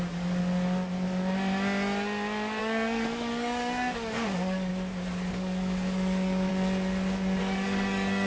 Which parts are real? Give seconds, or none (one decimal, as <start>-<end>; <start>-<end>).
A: 0.4-2.6; 4.7-5.3; 6.5-7.4